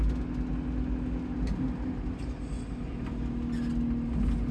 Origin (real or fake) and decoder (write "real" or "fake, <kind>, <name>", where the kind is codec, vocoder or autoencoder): real